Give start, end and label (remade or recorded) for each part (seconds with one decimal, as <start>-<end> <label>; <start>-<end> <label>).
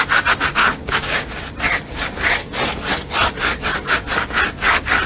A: 0.0-0.6 recorded; 0.6-1.3 remade; 1.3-5.1 recorded